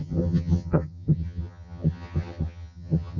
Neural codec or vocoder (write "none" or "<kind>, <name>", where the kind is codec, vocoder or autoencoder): vocoder, HiFi-GAN